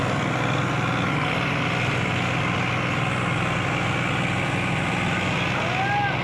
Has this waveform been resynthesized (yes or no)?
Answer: no